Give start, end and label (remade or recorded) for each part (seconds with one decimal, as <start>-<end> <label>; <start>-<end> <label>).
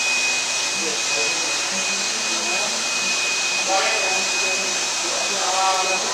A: 0.0-2.5 recorded; 2.5-5.1 remade; 5.1-6.1 recorded